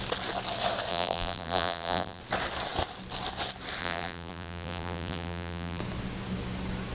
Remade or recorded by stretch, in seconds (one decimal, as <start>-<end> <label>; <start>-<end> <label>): 0.0-0.9 recorded; 0.9-2.2 remade; 2.2-3.8 recorded; 3.8-5.8 remade; 5.8-6.9 recorded